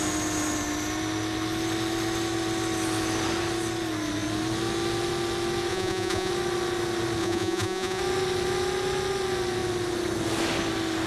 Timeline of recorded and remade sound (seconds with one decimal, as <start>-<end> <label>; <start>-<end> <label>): 0.0-5.7 recorded; 5.7-6.3 remade; 6.3-7.2 recorded; 7.2-8.0 remade; 8.0-11.1 recorded